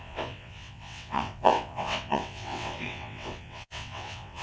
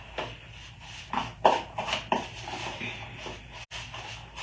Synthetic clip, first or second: first